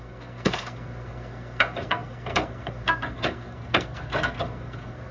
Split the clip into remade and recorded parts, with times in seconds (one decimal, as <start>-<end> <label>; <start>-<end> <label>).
0.0-5.1 remade

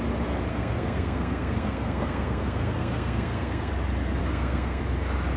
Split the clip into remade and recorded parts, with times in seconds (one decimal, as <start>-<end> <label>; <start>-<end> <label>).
0.0-0.5 recorded; 0.5-3.7 remade; 3.7-4.2 recorded; 4.2-4.8 remade; 4.8-5.4 recorded

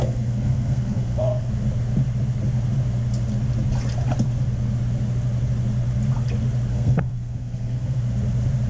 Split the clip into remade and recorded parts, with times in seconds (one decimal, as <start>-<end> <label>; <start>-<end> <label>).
0.0-1.5 remade; 1.5-6.7 recorded; 6.7-8.0 remade; 8.0-8.7 recorded

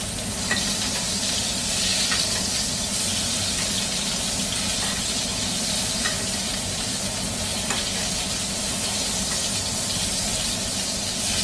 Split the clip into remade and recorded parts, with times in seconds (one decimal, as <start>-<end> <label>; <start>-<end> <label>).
0.0-11.4 recorded

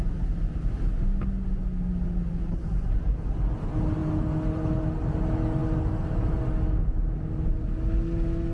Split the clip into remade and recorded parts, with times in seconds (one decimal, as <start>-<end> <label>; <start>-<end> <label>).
0.0-8.5 recorded

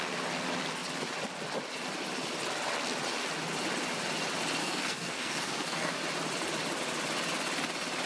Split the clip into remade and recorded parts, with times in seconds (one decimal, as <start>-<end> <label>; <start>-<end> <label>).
0.0-4.6 recorded; 4.6-6.0 remade; 6.0-8.1 recorded

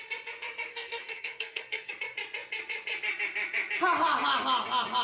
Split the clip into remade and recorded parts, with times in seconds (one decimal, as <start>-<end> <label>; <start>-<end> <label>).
0.0-0.7 recorded; 0.7-1.9 remade; 1.9-5.0 recorded

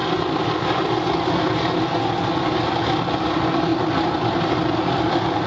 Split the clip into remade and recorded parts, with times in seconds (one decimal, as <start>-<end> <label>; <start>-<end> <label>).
0.0-5.5 recorded